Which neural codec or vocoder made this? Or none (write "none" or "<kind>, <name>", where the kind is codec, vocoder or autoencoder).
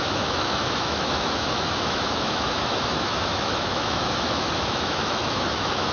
autoencoder, DAC-VAE